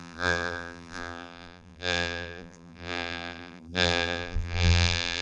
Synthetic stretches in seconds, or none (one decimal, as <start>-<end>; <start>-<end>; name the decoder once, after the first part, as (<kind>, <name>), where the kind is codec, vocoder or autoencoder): 0.0-5.2 (vocoder, BigVGAN v2)